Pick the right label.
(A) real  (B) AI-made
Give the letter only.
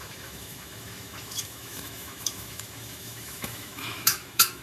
B